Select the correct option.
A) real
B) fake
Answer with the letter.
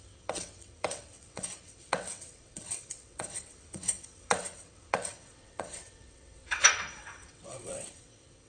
B